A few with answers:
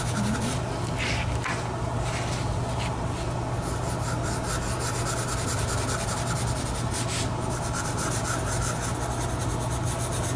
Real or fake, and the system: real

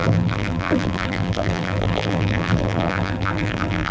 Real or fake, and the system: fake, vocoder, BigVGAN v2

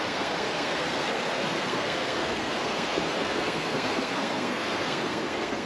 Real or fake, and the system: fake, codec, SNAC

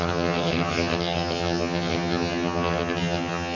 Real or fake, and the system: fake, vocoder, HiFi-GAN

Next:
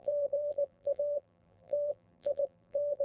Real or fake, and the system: fake, vocoder, BigVGAN v2